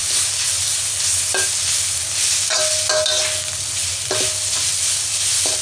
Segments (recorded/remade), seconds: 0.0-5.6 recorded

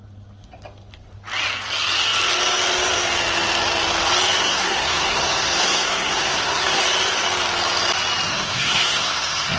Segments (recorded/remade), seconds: 0.0-4.4 recorded; 4.4-6.8 remade; 6.8-8.3 recorded; 8.3-9.6 remade

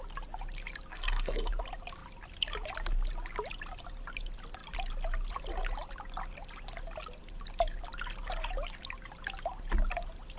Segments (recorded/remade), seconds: 0.0-0.9 recorded; 0.9-1.5 remade; 1.5-10.4 recorded

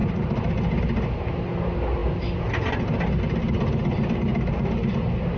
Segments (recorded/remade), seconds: 0.0-5.4 recorded

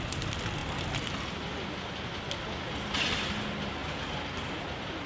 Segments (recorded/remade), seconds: 0.0-5.1 recorded